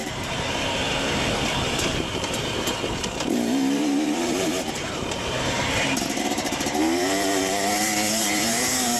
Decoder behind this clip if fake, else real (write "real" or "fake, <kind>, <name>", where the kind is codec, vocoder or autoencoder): fake, vocoder, BigVGAN v2